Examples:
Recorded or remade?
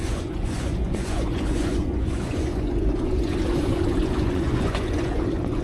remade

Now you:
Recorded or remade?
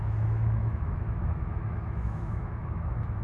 remade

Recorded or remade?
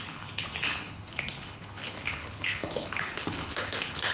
remade